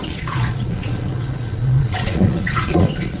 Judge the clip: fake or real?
fake